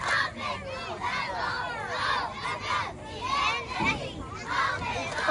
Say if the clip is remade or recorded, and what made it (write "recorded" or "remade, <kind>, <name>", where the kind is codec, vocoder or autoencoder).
recorded